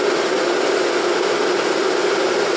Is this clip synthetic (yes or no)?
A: no